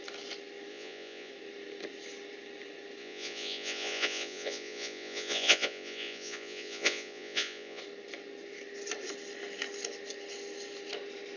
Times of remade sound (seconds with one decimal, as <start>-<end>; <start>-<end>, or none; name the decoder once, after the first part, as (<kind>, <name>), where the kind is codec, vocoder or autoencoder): 0.7-1.3 (vocoder, Vocos); 3.0-7.8